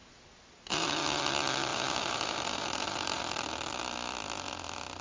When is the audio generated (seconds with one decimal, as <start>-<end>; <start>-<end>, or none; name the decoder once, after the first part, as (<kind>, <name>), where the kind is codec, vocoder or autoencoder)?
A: 1.7-3.3 (vocoder, BigVGAN v2)